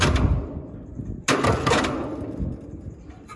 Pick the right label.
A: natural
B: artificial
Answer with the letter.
A